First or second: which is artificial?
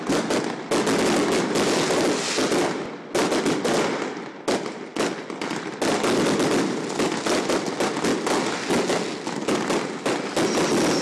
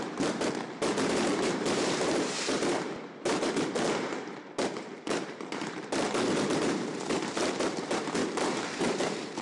second